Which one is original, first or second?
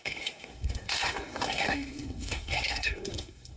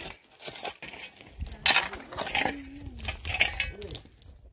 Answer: second